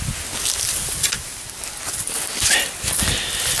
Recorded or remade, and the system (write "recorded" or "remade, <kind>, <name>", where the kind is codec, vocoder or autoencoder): recorded